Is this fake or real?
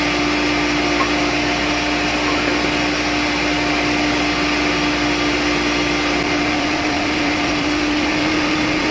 real